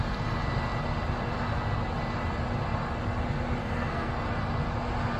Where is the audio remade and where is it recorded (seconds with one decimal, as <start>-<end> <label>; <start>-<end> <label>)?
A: 0.0-3.6 recorded; 3.6-4.2 remade; 4.2-5.2 recorded